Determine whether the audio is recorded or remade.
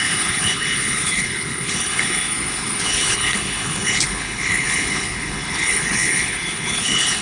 remade